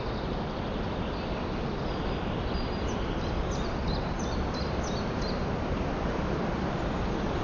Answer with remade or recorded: recorded